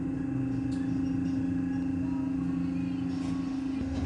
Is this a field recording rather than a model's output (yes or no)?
yes